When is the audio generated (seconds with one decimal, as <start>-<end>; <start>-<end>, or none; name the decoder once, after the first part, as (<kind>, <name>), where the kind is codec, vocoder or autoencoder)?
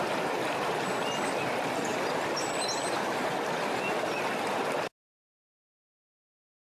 none